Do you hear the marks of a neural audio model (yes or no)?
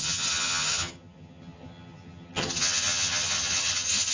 yes